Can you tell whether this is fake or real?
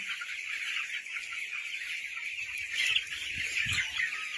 real